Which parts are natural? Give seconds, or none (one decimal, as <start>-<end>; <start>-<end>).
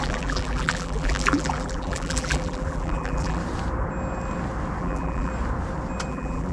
3.4-4.8; 5.3-6.1